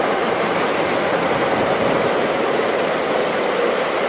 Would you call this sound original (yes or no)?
yes